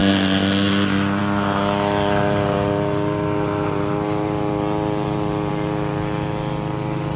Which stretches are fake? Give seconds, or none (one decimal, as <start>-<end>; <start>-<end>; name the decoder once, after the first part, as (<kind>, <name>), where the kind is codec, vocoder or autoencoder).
none